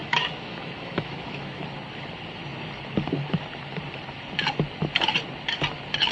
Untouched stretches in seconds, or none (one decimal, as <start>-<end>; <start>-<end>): 1.6-6.1